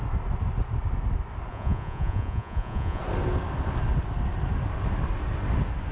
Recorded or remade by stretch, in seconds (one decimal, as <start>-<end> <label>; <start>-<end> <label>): 0.0-1.5 recorded; 1.5-3.0 remade; 3.0-5.9 recorded